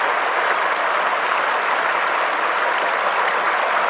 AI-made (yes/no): no